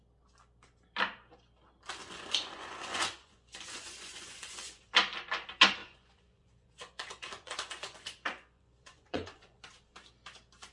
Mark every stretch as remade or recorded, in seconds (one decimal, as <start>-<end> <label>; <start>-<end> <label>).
0.0-2.0 recorded; 2.0-4.9 remade; 4.9-5.8 recorded; 5.8-9.6 remade; 9.6-10.7 recorded